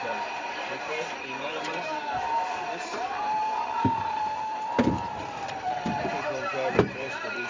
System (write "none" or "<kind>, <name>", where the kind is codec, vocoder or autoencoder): vocoder, BigVGAN v2